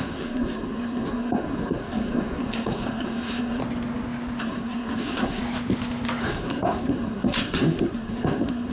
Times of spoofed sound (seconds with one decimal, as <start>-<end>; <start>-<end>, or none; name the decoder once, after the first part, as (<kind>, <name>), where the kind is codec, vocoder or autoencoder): 0.0-3.6 (codec, SNAC); 4.4-5.4; 6.2-8.7